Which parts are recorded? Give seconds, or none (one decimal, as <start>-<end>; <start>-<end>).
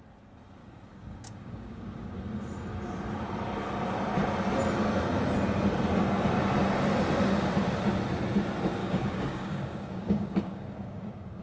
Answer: 0.0-0.6; 2.2-8.8